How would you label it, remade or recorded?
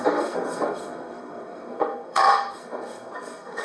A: remade